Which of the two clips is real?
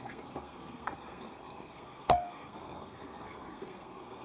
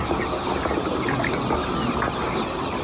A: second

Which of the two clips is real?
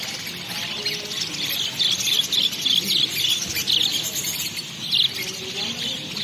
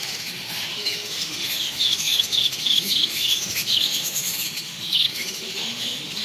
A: first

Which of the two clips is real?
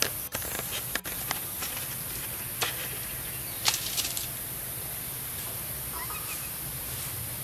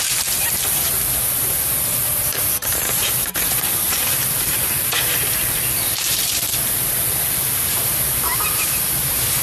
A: first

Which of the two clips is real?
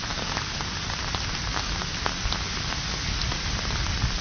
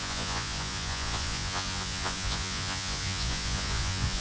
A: first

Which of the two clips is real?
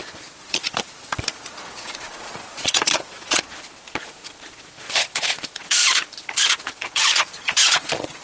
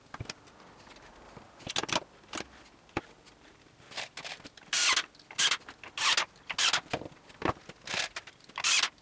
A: second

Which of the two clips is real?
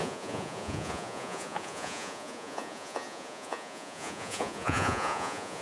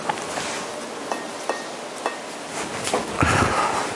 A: second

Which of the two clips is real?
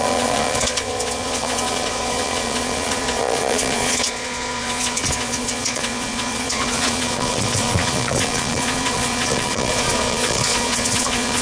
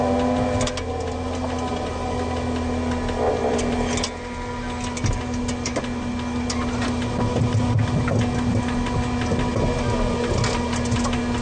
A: second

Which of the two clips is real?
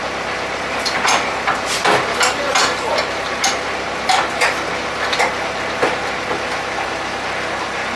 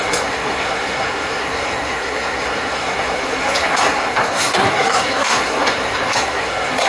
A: first